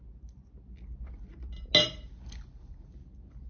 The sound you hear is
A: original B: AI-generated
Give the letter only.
A